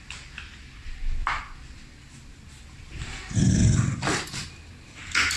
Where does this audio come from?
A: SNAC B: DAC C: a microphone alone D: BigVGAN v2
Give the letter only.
C